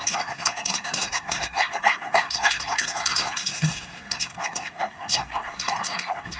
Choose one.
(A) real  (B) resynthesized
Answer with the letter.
B